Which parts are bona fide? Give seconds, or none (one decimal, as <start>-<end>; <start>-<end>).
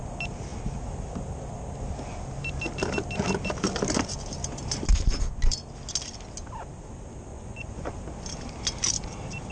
0.0-7.3; 7.9-9.5